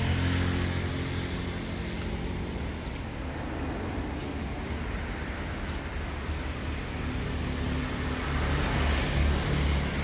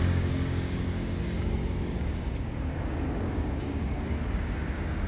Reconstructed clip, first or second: second